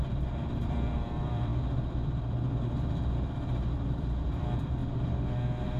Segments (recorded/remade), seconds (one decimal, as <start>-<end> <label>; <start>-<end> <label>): 0.0-4.8 remade; 4.8-5.8 recorded